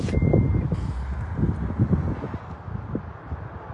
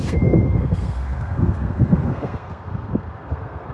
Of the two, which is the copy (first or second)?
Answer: second